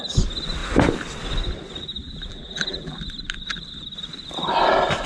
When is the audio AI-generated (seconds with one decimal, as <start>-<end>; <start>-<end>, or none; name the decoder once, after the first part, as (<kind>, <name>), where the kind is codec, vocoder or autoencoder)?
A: 1.9-3.0 (vocoder, BigVGAN v2)